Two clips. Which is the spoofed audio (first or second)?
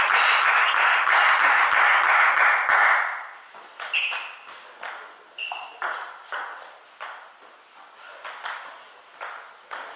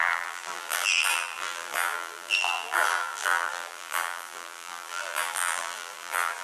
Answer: second